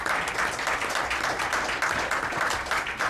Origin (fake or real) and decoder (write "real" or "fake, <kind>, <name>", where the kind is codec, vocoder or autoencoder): real